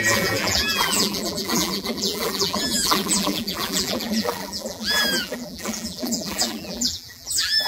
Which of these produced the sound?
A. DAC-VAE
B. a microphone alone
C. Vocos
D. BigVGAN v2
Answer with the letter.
D